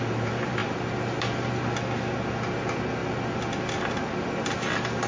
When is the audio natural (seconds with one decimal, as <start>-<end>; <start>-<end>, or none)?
0.0-5.1